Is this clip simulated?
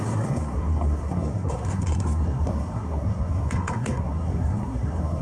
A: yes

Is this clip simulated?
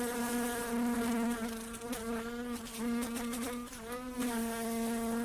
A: no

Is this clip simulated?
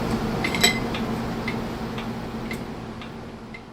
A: no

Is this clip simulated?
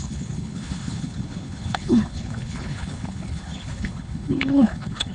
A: yes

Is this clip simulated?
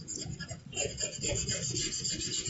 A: no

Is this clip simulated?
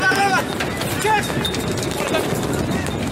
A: no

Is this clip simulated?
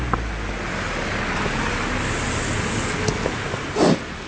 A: no